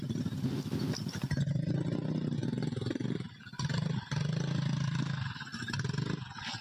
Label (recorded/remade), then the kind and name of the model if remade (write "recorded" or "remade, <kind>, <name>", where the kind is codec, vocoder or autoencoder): recorded